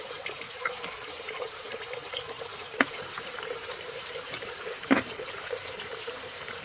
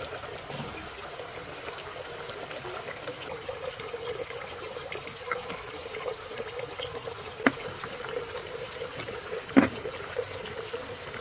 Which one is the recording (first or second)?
second